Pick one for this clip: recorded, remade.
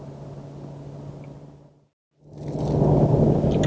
recorded